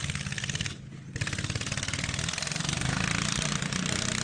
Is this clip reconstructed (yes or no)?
no